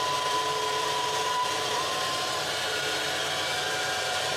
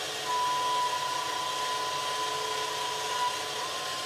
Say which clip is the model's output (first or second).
first